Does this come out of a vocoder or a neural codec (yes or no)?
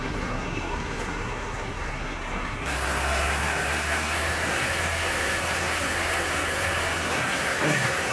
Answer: yes